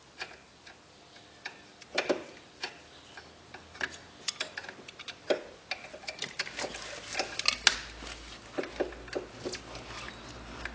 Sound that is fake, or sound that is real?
real